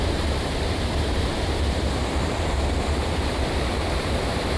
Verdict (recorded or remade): remade